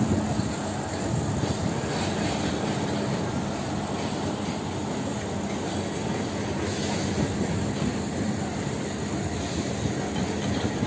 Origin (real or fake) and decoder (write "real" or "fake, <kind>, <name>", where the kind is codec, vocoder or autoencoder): real